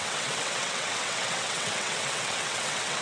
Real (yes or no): no